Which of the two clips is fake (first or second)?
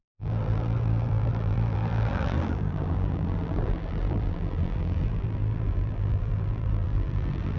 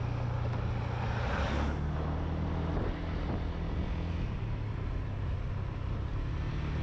first